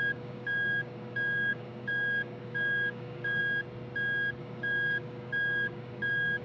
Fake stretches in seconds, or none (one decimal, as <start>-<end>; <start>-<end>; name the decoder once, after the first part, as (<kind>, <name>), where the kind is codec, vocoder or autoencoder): 0.0-3.4 (codec, DAC); 4.4-6.4